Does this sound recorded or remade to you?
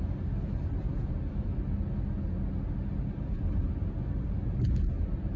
recorded